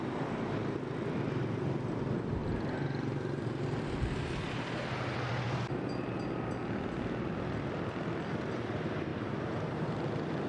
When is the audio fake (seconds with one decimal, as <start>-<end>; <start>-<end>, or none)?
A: 9.1-10.1